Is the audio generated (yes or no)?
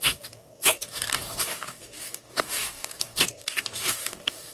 yes